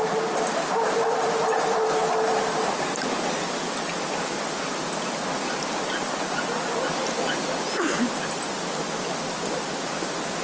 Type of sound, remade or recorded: recorded